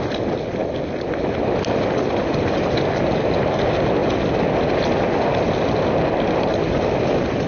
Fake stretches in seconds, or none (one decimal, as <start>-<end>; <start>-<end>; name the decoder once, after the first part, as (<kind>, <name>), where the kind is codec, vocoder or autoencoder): none